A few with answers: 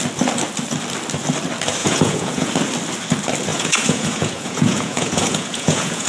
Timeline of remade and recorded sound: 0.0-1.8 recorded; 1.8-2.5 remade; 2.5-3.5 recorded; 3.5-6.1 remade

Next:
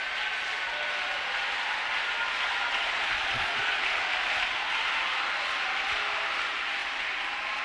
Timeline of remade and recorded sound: 0.0-2.7 recorded; 2.7-4.1 remade; 4.1-7.6 recorded

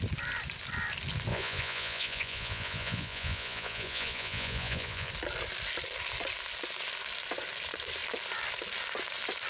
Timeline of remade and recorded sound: 0.0-1.3 recorded; 1.3-5.1 remade; 5.1-9.5 recorded

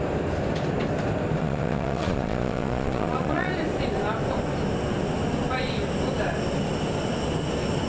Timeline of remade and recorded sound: 0.0-1.4 recorded; 1.4-3.5 remade; 3.5-7.9 recorded

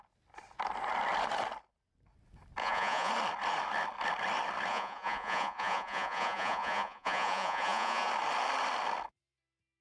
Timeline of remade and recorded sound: 0.0-2.6 recorded; 2.6-3.1 remade; 3.1-4.7 recorded; 4.7-8.1 remade; 8.1-9.8 recorded